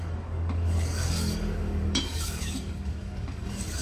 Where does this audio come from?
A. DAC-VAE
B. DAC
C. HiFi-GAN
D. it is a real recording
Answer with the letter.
B